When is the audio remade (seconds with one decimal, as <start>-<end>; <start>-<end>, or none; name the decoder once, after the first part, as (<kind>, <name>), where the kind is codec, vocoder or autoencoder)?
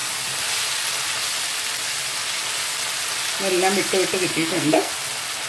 4.3-4.9 (codec, SNAC)